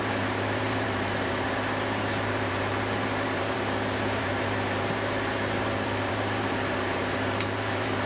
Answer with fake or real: fake